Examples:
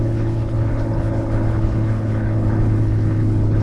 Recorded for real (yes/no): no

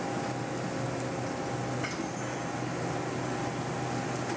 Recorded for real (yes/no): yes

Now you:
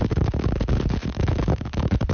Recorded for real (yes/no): no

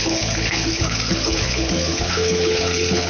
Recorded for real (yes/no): no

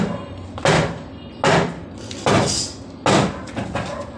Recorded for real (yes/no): yes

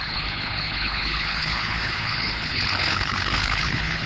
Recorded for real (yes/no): no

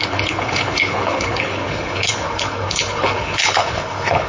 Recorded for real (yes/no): no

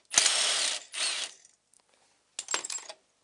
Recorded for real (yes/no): yes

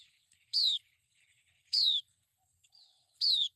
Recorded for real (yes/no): no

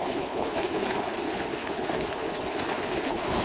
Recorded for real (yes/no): no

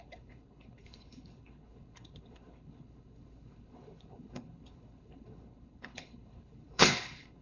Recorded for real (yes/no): no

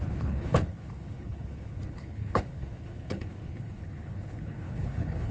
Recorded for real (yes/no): no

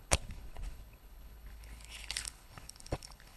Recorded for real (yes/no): no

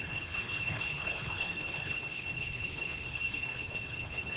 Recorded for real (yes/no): no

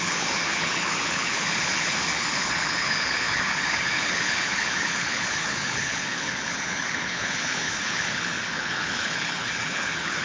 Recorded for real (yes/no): no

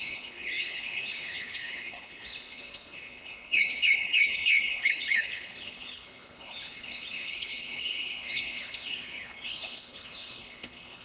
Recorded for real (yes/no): no